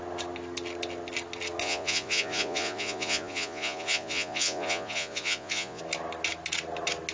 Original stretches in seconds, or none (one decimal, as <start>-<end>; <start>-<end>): 0.0-1.6; 5.8-7.1